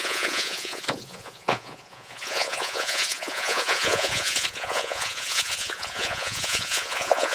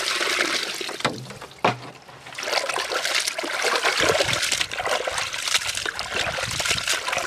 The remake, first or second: first